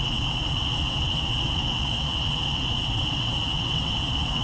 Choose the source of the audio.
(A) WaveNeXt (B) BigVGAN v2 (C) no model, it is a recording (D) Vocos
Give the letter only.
A